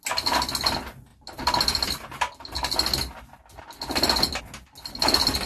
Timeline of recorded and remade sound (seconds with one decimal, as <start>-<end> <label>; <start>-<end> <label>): 0.0-5.5 recorded